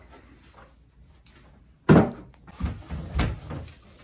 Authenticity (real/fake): real